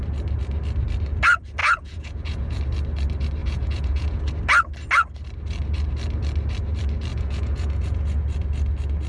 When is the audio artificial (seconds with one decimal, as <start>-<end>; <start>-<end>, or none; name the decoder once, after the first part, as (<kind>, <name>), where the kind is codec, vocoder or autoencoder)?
1.6-2.6 (vocoder, Vocos); 3.4-4.2; 7.1-8.2